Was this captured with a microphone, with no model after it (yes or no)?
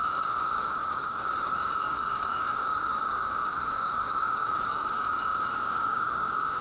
no